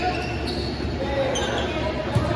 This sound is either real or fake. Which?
real